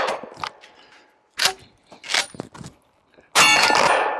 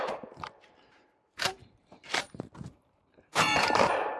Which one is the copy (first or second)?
second